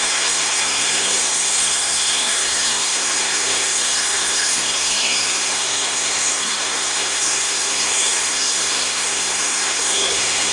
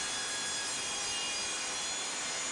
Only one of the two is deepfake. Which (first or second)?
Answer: first